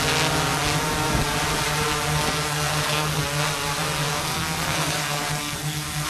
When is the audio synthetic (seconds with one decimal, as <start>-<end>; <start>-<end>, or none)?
2.2-3.2; 4.1-6.1